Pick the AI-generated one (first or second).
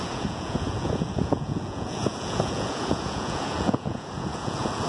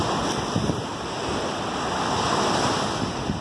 first